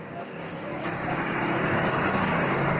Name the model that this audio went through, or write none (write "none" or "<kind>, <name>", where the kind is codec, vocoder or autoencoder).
codec, DAC